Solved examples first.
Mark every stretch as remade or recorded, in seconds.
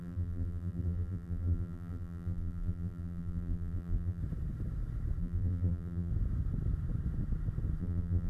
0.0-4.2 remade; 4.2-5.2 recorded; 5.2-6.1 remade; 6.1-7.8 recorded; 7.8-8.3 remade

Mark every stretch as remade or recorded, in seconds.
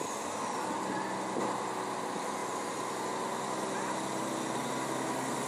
0.0-5.5 recorded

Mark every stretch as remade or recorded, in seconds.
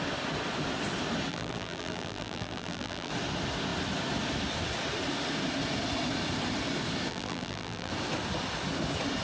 0.0-1.3 recorded; 1.3-3.1 remade; 3.1-7.1 recorded; 7.1-7.9 remade; 7.9-9.2 recorded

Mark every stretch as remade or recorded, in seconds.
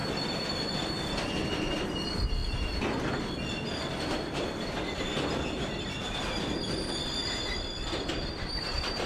0.0-1.1 remade; 1.1-7.2 recorded; 7.2-9.1 remade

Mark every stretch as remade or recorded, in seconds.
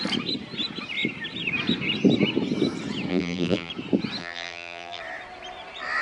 0.0-3.1 recorded; 3.1-3.7 remade; 3.7-4.2 recorded; 4.2-5.0 remade; 5.0-6.0 recorded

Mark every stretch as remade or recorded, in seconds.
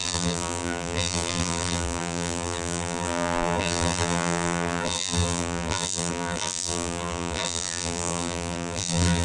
0.0-9.2 remade